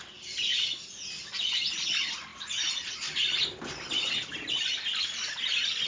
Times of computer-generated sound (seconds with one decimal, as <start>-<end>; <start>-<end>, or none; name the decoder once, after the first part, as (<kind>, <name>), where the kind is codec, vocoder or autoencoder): 0.5-1.0 (vocoder, Vocos)